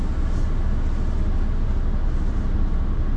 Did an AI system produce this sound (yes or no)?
no